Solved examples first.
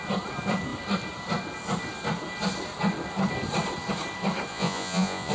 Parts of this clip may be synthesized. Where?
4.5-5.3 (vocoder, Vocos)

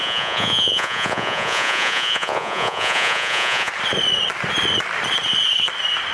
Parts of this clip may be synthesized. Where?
0.0-3.7 (vocoder, Vocos)

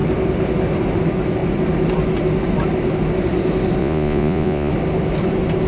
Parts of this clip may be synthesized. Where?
3.8-4.7 (vocoder, Vocos)

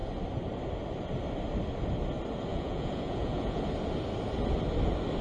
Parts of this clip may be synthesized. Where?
2.5-3.6 (vocoder, Vocos)